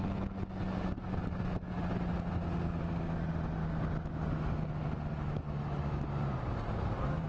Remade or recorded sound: recorded